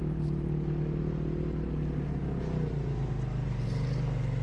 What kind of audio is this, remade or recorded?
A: recorded